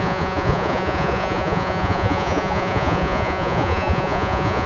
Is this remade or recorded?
remade